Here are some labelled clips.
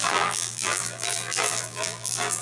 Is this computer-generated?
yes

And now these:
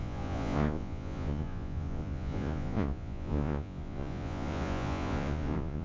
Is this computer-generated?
yes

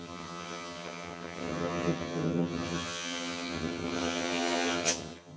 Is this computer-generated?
yes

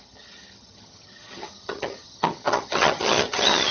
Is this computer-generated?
yes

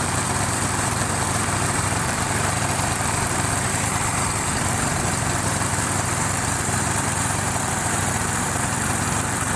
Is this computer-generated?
yes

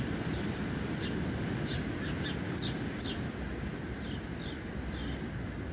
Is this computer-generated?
no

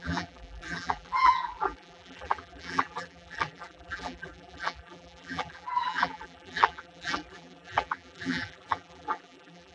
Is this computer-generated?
yes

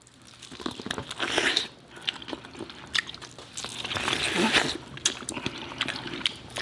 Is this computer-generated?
no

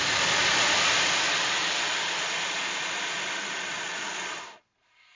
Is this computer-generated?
no